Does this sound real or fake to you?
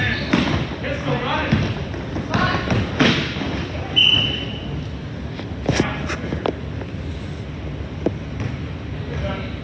real